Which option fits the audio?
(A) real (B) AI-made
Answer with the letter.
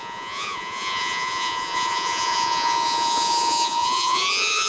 B